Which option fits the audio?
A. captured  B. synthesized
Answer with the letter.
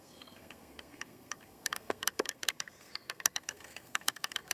B